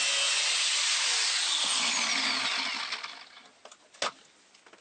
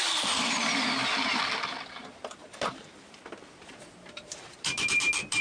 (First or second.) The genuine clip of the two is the first